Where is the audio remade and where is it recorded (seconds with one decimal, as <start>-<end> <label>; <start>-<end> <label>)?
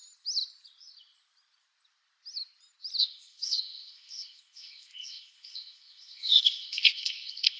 0.0-3.0 recorded; 3.0-7.6 remade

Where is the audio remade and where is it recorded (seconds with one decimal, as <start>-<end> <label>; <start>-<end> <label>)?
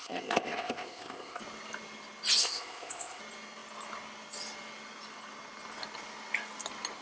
0.0-1.4 remade; 1.4-2.4 recorded; 2.4-3.2 remade; 3.2-7.0 recorded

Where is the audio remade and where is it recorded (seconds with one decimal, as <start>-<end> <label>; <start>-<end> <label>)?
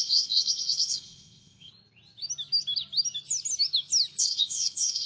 0.0-1.7 remade; 1.7-4.2 recorded; 4.2-5.1 remade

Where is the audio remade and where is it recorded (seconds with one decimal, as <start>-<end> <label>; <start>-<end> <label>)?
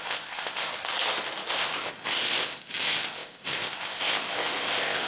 0.0-0.7 remade; 0.7-1.5 recorded; 1.5-5.1 remade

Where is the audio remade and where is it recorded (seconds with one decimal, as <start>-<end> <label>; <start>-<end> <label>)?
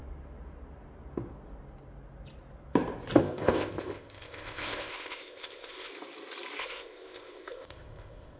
0.0-3.2 recorded; 3.2-5.9 remade; 5.9-6.6 recorded; 6.6-8.4 remade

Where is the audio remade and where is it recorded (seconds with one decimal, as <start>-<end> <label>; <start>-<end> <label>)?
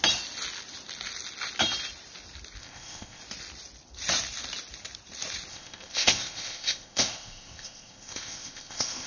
0.0-2.6 recorded; 2.6-3.2 remade; 3.2-5.5 recorded; 5.5-9.1 remade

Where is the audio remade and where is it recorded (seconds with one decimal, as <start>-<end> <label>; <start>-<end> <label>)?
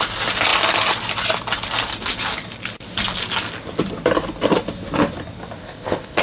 0.0-5.6 recorded; 5.6-6.2 remade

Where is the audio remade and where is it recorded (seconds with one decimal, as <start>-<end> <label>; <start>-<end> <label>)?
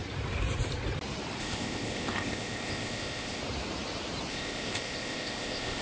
0.0-1.4 recorded; 1.4-3.4 remade; 3.4-4.3 recorded; 4.3-5.8 remade